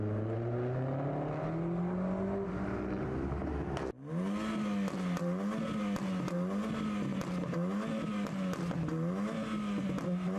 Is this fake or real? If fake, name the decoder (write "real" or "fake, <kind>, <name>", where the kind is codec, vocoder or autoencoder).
real